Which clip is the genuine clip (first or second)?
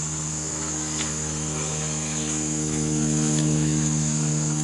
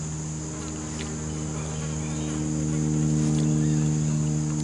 second